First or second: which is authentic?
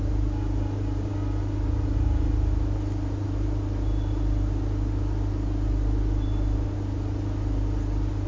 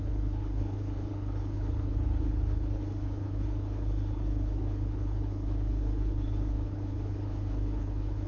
first